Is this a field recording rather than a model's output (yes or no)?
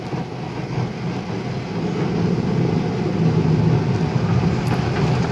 yes